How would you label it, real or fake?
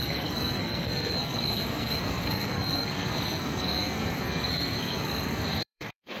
fake